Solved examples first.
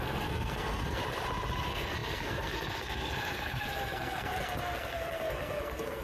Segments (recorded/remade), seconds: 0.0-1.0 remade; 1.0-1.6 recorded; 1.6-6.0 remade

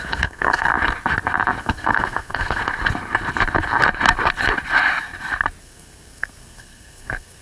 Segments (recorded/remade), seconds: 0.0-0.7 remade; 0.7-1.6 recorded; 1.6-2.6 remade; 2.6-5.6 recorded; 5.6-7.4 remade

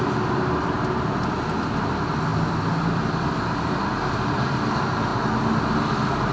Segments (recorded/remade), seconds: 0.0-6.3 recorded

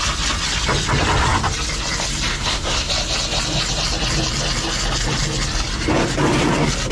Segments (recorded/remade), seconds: 0.0-2.3 recorded; 2.3-2.9 remade; 2.9-6.9 recorded

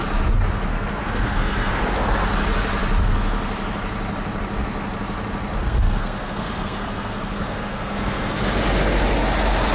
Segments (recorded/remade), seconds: 0.0-0.7 recorded; 0.7-1.7 remade; 1.7-5.6 recorded; 5.6-8.4 remade; 8.4-9.7 recorded